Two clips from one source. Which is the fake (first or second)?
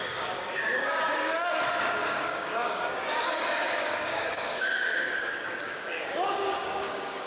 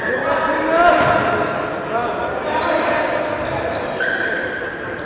first